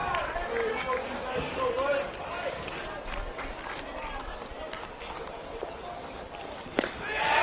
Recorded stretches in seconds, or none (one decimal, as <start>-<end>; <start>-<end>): 0.0-7.4